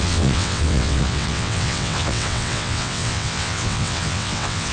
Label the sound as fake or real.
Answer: fake